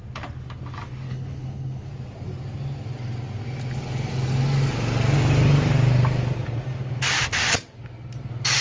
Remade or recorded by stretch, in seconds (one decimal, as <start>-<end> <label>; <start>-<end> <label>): 0.0-1.1 recorded; 1.1-1.9 remade; 1.9-8.6 recorded